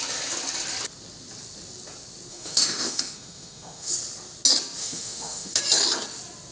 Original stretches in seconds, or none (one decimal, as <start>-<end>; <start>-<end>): 0.0-2.3; 3.9-4.8; 5.6-6.5